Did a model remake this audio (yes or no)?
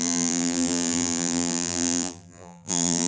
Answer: yes